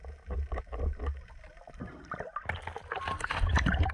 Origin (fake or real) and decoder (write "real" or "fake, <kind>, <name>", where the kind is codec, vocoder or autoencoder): real